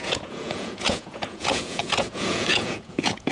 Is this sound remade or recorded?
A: remade